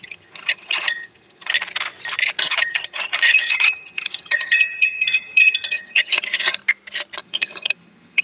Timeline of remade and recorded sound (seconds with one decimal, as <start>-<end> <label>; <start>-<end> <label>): 0.0-1.5 remade; 1.5-2.4 recorded; 2.4-6.6 remade; 6.6-7.2 recorded; 7.2-8.2 remade